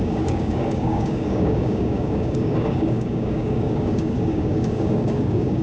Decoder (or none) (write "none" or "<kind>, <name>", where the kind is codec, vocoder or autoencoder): codec, DAC